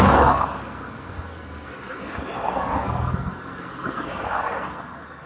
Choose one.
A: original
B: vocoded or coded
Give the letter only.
B